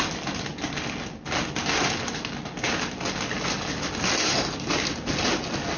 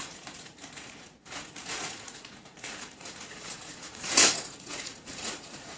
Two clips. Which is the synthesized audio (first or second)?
second